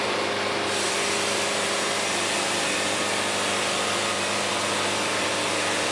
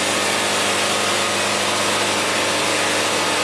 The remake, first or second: first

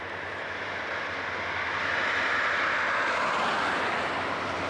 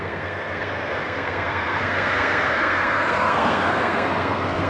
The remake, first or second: second